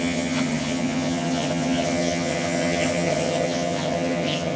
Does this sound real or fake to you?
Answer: fake